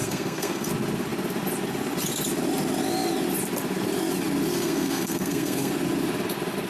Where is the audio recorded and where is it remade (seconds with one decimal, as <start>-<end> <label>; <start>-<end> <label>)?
0.0-0.7 remade; 0.7-4.5 recorded; 4.5-5.7 remade; 5.7-6.7 recorded